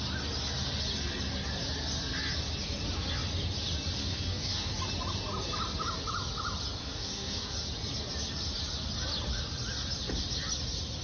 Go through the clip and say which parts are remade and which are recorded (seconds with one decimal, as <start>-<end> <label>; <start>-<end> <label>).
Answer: 0.0-4.0 recorded; 4.0-4.7 remade; 4.7-6.8 recorded; 6.8-7.5 remade; 7.5-11.0 recorded